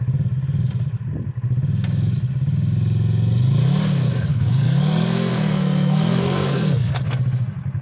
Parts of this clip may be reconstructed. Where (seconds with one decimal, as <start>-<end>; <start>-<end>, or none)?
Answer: 4.3-7.0